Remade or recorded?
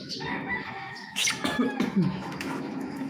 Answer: remade